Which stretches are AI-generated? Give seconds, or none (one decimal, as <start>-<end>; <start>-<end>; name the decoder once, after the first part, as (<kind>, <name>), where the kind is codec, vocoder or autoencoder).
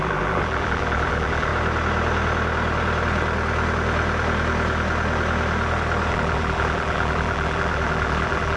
0.0-1.5 (vocoder, BigVGAN v2); 6.1-8.6